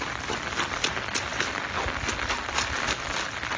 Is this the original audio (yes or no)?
yes